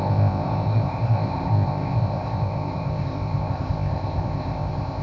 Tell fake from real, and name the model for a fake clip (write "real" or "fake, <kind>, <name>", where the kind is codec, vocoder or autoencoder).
fake, codec, ZipCodec